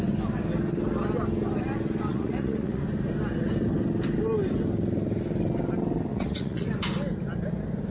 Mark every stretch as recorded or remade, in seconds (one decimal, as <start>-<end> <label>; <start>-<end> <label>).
0.0-2.1 recorded; 2.1-2.8 remade; 2.8-6.1 recorded; 6.1-6.7 remade; 6.7-7.9 recorded